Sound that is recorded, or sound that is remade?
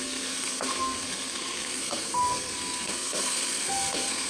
remade